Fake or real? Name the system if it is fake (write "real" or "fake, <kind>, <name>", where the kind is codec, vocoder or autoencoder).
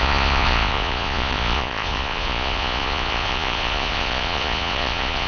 fake, vocoder, Vocos